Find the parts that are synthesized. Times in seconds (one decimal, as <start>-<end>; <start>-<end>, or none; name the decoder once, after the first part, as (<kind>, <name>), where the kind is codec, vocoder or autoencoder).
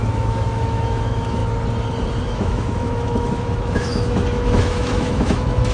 0.0-1.4 (autoencoder, DAC-VAE); 2.3-5.7